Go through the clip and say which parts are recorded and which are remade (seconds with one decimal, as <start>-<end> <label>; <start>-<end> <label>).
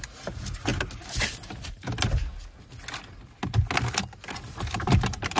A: 0.0-0.7 remade; 0.7-1.7 recorded; 1.7-2.3 remade; 2.3-4.8 recorded; 4.8-5.4 remade